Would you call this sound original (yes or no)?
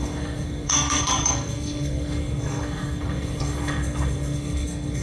no